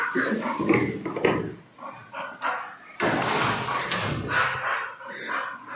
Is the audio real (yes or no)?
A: yes